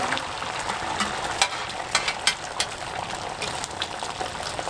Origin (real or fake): real